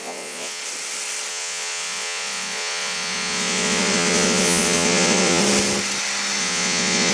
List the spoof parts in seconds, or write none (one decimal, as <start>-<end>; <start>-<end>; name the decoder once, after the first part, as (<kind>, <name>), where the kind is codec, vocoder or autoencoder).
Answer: 0.0-0.6 (vocoder, Vocos); 1.3-5.4; 6.4-7.1